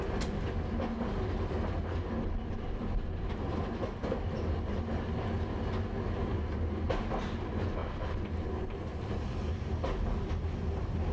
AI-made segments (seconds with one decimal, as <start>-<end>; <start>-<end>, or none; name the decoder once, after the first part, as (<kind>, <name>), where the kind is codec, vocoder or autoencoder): none